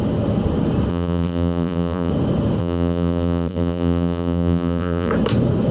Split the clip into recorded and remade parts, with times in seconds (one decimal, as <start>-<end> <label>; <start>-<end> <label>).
0.0-0.9 recorded; 0.9-2.1 remade; 2.1-2.6 recorded; 2.6-5.1 remade; 5.1-5.7 recorded